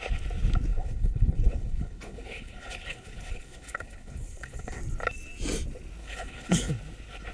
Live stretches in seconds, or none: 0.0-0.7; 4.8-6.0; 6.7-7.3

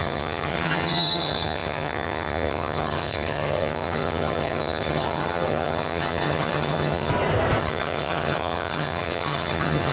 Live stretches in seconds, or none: 7.1-7.6

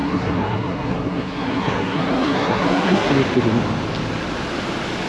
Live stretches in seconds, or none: 3.1-5.1

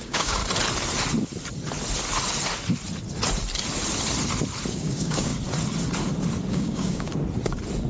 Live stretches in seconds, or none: 0.4-4.7; 5.3-6.5; 7.1-7.9

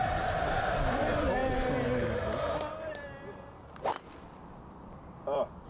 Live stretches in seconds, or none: 1.4-3.3